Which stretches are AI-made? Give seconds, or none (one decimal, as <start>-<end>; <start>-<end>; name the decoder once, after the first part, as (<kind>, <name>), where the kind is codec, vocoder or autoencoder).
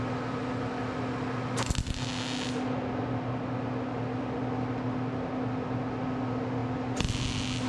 none